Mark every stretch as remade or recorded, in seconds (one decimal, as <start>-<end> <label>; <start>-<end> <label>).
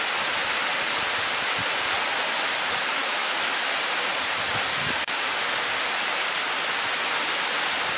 0.0-3.0 recorded; 3.0-3.7 remade; 3.7-8.0 recorded